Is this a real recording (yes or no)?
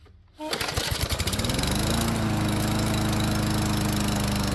yes